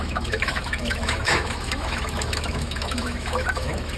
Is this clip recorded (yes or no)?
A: no